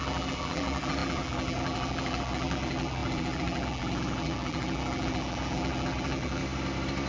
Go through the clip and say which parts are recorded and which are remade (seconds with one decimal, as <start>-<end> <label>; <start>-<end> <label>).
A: 0.0-6.4 remade; 6.4-7.1 recorded